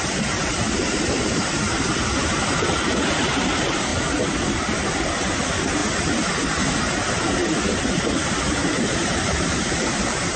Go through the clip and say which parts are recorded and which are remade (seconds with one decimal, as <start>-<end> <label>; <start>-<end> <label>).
0.0-3.9 remade; 3.9-4.5 recorded; 4.5-5.8 remade; 5.8-8.0 recorded; 8.0-10.4 remade